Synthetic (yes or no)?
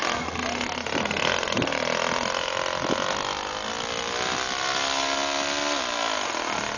no